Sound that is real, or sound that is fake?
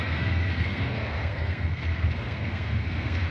fake